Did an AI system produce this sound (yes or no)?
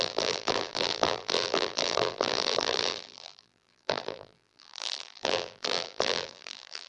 yes